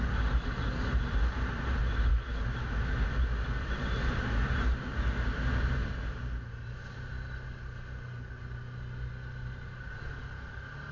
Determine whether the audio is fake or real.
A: real